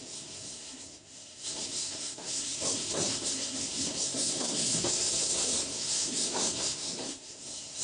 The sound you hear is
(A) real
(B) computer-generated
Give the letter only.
B